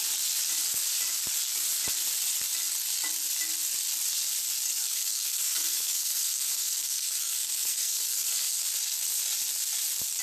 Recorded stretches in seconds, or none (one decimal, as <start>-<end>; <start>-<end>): 0.0-4.7; 8.6-10.2

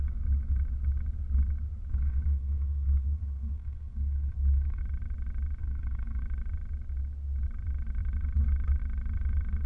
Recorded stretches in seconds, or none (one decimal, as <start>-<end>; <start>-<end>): 0.0-1.9; 4.8-5.6; 6.2-9.7

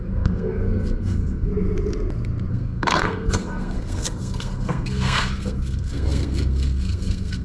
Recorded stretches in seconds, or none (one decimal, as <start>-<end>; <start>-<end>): 1.5-2.5

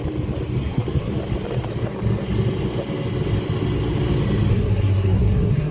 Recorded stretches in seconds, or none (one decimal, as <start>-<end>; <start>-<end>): 0.0-0.6; 1.1-4.5

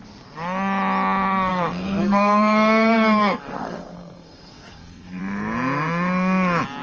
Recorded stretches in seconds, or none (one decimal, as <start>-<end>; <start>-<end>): 0.0-1.5; 5.2-6.8

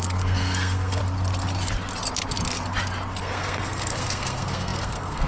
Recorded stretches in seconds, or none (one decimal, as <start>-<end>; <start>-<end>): 1.0-3.2